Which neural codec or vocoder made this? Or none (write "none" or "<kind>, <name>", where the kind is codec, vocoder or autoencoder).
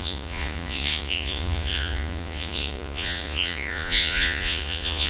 vocoder, Vocos